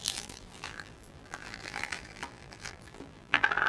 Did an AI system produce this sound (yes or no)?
yes